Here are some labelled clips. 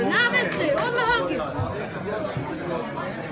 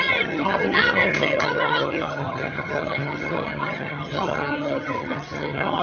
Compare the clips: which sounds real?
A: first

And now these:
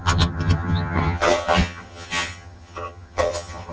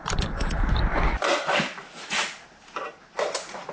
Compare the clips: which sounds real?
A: second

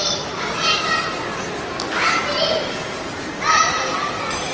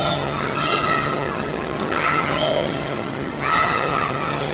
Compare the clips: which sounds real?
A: first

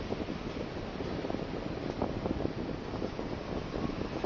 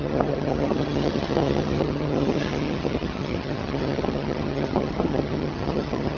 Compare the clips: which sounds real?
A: first